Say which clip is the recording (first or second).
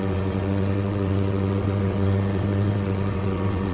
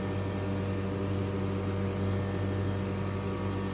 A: second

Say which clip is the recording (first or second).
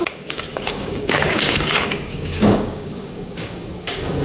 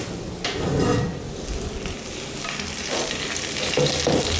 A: second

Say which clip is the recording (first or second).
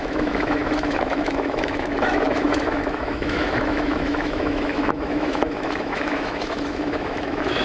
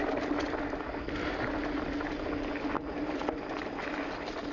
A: second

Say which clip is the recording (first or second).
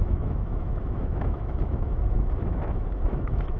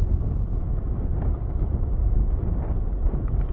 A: second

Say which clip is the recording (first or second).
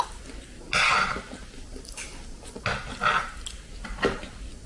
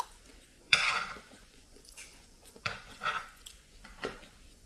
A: first